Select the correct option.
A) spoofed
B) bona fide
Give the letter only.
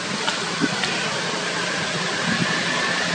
A